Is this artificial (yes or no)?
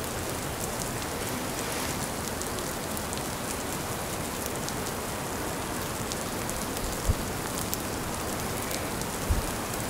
no